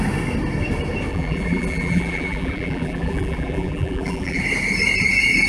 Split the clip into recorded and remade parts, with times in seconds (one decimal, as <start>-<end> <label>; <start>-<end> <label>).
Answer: 0.0-1.1 recorded; 1.1-4.4 remade; 4.4-5.5 recorded